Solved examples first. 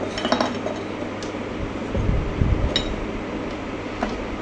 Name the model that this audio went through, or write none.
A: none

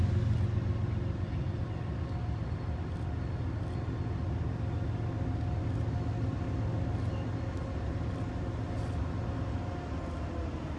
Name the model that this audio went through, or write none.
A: none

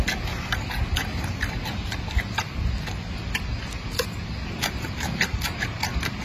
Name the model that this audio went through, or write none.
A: none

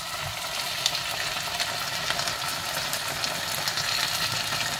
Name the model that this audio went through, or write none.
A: none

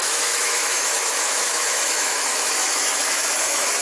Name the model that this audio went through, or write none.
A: autoencoder, DAC-VAE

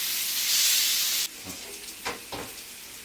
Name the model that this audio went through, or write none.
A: none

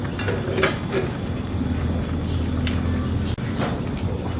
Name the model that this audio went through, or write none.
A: none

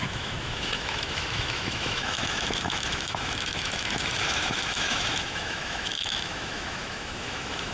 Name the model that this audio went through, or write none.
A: autoencoder, DAC-VAE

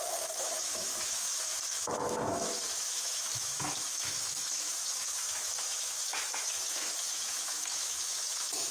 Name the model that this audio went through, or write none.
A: autoencoder, DAC-VAE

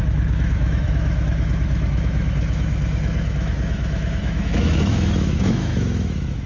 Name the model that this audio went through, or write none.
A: autoencoder, DAC-VAE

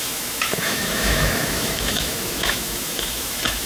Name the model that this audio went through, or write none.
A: autoencoder, DAC-VAE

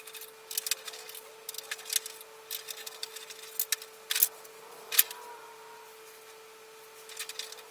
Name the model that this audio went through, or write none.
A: none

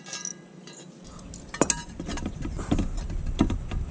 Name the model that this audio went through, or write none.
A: none